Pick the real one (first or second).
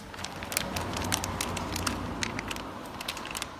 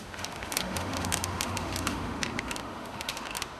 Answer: first